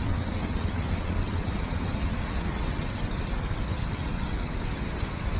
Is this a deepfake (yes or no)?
yes